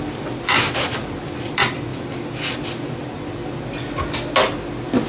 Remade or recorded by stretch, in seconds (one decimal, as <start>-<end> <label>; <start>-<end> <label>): 0.0-1.9 remade; 1.9-5.1 recorded